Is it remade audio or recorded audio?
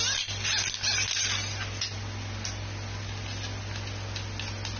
recorded